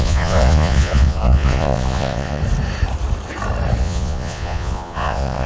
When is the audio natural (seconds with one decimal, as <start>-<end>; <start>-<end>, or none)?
2.4-3.8